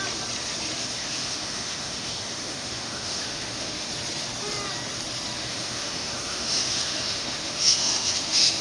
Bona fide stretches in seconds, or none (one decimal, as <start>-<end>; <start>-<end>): 0.0-0.8; 3.9-5.4

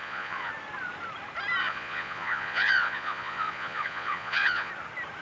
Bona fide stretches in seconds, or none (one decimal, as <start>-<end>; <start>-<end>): 0.5-1.6; 4.7-5.2

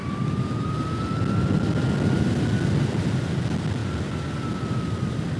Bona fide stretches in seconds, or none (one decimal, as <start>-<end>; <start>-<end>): 0.0-5.4

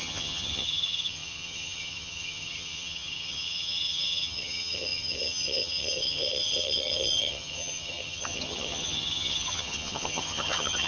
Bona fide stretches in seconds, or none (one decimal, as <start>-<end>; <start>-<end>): none

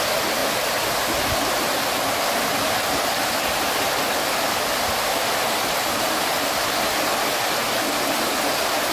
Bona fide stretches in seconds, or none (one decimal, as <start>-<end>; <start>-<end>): 0.0-8.9

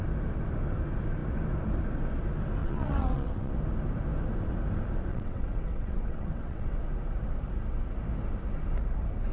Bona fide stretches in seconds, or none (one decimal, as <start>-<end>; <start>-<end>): 0.0-2.6; 3.5-5.1; 6.7-9.3